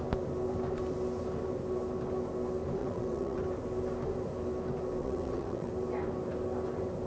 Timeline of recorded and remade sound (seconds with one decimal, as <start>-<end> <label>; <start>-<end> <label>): 0.0-2.8 recorded; 2.8-3.4 remade; 3.4-5.0 recorded; 5.0-5.7 remade; 5.7-7.1 recorded